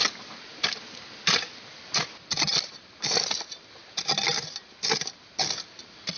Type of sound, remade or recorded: recorded